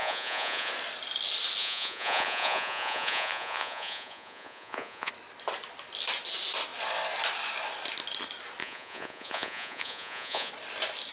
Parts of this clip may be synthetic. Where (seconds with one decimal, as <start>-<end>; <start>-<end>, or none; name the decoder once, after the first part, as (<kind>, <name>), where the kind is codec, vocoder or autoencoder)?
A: 0.0-0.7 (vocoder, Vocos); 1.6-5.1; 8.6-10.5